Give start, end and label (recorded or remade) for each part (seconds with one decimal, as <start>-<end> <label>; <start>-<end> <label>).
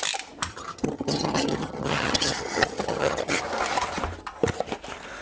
0.0-0.5 recorded; 0.5-3.4 remade; 3.4-5.2 recorded